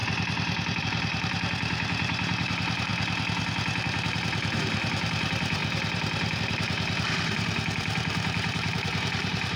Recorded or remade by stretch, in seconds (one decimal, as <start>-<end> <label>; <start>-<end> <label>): 0.0-0.8 recorded; 0.8-2.9 remade; 2.9-3.8 recorded; 3.8-5.6 remade; 5.6-6.4 recorded; 6.4-9.6 remade